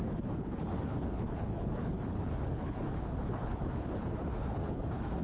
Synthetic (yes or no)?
yes